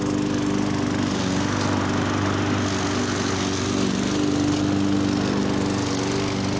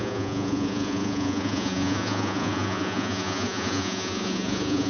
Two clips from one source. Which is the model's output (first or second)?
second